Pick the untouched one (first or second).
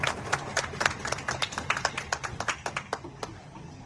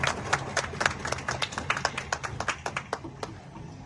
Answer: second